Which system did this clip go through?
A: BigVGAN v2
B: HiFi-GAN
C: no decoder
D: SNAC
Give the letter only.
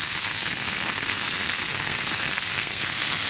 D